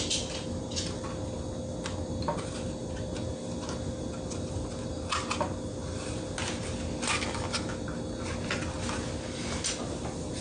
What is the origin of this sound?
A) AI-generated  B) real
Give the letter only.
B